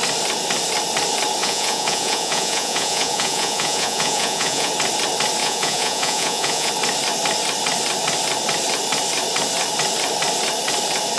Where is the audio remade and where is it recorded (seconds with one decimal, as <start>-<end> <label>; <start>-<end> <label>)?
0.0-1.4 recorded; 1.4-4.7 remade; 4.7-5.4 recorded; 5.4-6.7 remade; 6.7-11.2 recorded